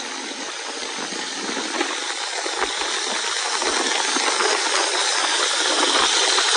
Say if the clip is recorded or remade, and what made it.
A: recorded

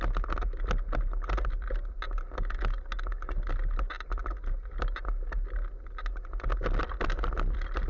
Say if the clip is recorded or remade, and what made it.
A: recorded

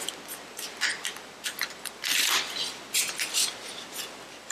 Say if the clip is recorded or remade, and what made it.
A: recorded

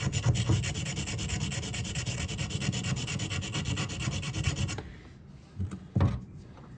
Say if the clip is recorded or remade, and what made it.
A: recorded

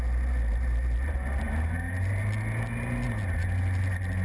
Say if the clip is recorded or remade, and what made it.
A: recorded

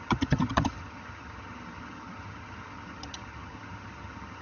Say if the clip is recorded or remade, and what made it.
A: remade, vocoder, HiFi-GAN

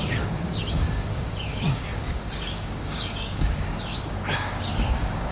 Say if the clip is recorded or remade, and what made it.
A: remade, codec, DAC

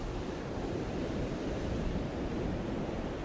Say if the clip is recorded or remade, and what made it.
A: remade, vocoder, BigVGAN v2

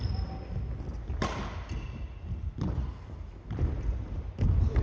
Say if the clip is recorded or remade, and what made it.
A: recorded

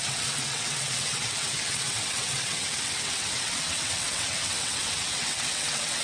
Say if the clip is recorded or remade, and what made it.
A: remade, vocoder, WaveNeXt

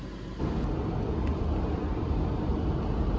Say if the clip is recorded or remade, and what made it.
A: recorded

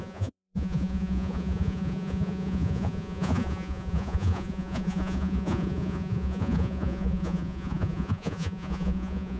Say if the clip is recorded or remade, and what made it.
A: remade, vocoder, Vocos